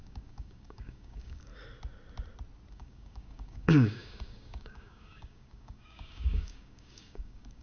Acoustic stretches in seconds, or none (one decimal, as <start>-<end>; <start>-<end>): 1.5-2.7

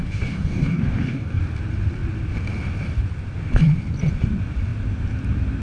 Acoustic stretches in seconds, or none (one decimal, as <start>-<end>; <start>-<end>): 1.4-5.6

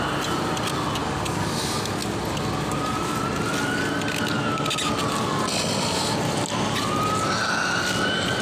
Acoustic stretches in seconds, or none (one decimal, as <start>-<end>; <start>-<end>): 0.0-1.0; 1.6-8.4

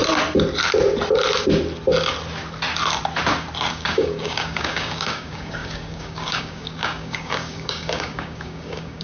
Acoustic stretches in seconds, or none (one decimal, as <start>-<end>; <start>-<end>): 0.0-3.7

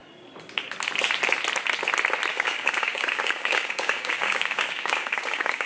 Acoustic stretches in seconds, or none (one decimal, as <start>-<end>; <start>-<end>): 0.0-2.3